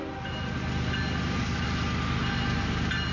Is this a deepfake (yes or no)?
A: no